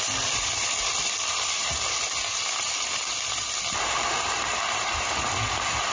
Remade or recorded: remade